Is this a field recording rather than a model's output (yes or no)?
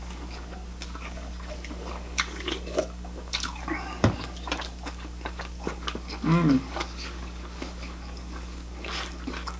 no